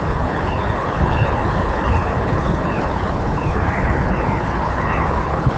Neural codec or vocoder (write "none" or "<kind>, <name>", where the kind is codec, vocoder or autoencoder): codec, HILCodec